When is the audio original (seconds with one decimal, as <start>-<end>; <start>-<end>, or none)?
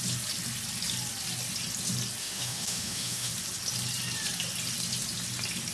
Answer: 0.0-2.2; 3.3-5.7